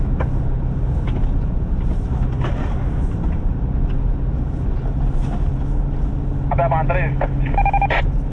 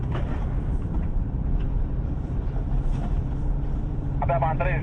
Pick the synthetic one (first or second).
second